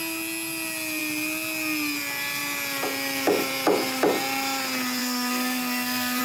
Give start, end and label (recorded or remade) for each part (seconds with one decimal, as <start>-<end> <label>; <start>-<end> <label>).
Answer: 0.0-5.0 recorded; 5.0-6.2 remade